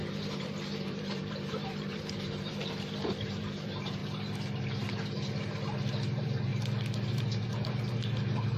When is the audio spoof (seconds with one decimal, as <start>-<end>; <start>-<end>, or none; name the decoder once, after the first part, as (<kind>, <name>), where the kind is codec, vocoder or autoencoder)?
0.0-4.0 (vocoder, BigVGAN v2); 6.1-6.5; 7.1-8.6